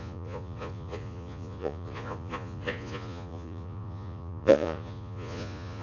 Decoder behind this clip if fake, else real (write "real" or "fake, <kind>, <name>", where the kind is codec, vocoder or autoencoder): fake, vocoder, Vocos